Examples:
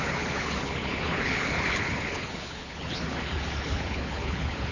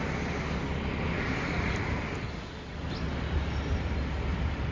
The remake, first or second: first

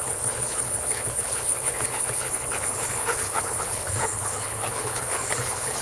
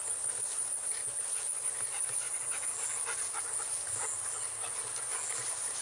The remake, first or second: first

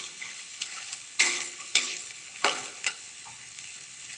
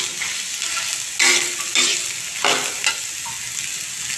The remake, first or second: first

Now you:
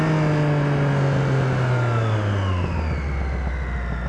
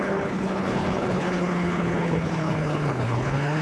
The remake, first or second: second